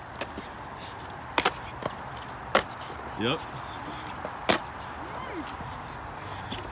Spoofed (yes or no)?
no